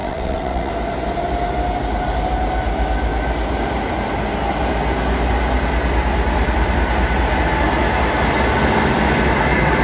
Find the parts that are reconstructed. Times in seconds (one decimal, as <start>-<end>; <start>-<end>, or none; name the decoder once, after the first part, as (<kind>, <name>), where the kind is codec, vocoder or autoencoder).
0.0-0.7 (vocoder, WaveNeXt)